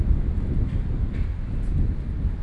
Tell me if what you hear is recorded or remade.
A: recorded